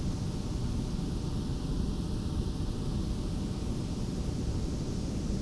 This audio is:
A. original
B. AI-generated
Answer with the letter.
A